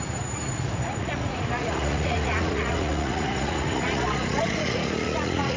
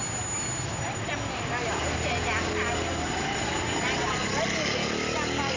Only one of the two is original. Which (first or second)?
second